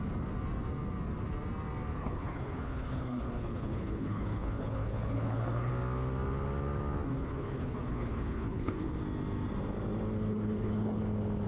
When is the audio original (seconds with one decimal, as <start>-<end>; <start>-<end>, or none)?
0.0-1.9; 5.7-7.1; 9.0-10.3; 11.0-11.5